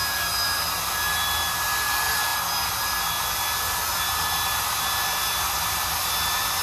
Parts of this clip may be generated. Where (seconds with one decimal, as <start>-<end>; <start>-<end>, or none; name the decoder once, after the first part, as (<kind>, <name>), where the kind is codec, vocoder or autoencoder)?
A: none